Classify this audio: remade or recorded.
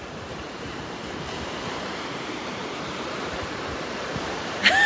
remade